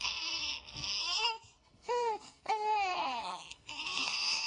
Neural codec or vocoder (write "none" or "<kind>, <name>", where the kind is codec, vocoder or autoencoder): codec, SNAC